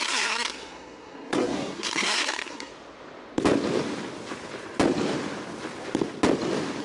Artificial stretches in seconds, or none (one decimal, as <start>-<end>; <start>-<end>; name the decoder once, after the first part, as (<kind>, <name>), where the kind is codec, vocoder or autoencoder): 0.0-2.7 (codec, SNAC)